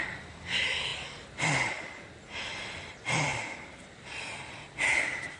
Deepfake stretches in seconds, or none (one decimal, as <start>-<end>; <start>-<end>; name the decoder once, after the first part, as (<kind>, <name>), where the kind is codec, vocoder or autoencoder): none